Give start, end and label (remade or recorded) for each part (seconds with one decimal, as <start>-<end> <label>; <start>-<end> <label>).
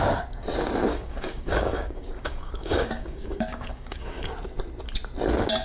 0.0-0.9 recorded; 0.9-4.3 remade; 4.3-5.6 recorded